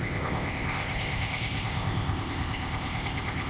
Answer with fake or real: fake